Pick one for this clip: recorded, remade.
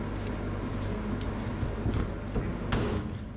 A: recorded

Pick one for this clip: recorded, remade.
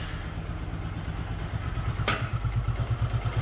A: recorded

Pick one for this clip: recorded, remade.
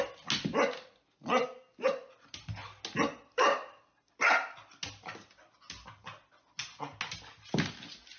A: recorded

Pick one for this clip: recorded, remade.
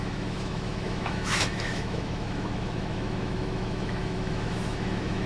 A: remade